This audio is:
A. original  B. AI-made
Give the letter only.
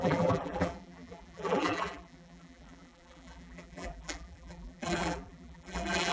B